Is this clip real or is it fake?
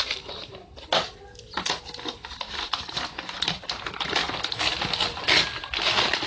real